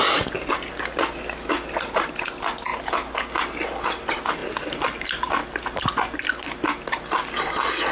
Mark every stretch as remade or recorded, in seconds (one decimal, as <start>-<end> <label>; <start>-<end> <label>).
0.0-7.9 recorded